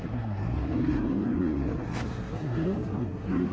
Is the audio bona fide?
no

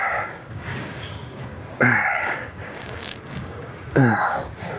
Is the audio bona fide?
no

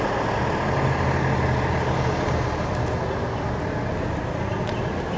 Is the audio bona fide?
yes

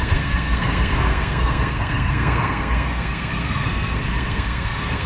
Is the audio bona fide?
no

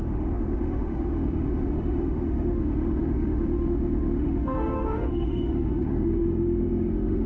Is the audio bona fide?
no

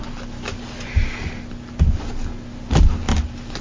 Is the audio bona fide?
yes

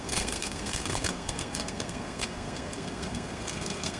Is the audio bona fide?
no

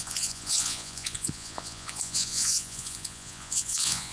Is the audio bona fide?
no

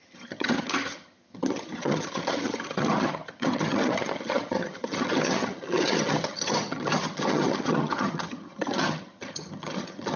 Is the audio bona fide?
no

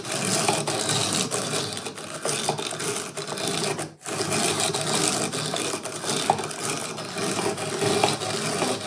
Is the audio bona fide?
yes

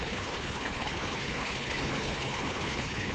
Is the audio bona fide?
no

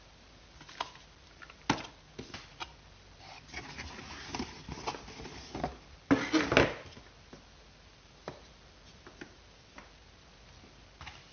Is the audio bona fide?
yes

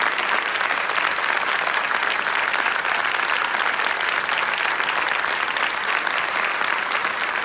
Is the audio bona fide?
yes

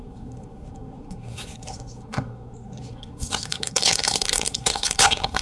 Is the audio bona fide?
no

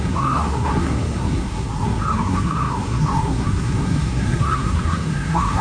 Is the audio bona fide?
no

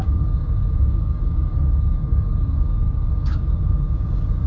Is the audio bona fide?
no